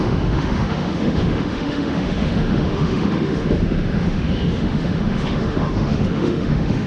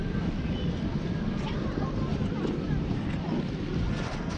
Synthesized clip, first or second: first